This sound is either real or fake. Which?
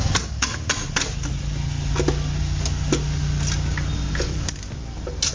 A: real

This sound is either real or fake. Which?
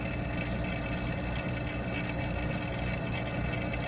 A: real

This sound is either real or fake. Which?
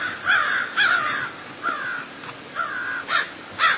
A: real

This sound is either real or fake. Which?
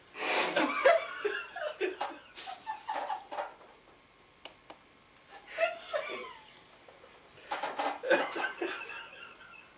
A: real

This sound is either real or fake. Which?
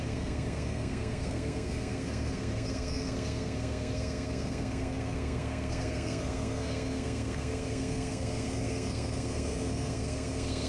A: fake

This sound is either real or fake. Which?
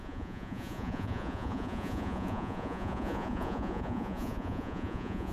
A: fake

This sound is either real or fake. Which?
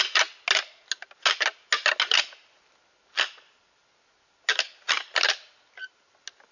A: real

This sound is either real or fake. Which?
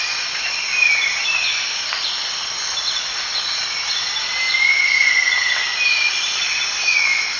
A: real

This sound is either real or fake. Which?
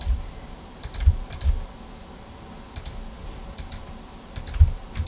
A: real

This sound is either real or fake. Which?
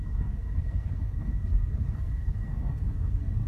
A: fake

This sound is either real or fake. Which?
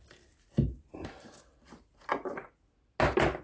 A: real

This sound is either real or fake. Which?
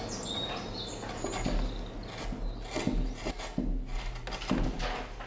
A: real